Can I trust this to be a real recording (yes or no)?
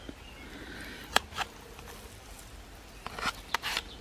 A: yes